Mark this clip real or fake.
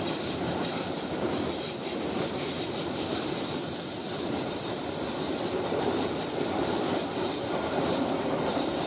fake